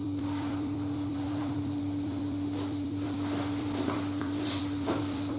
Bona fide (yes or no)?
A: no